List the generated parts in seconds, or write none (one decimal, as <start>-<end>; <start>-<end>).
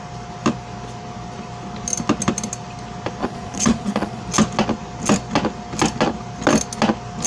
3.2-4.2